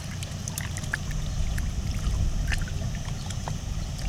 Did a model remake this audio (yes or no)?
no